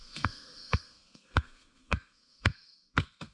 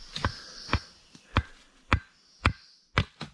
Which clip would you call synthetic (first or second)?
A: first